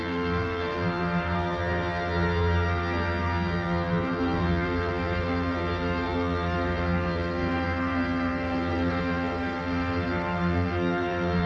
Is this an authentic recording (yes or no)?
no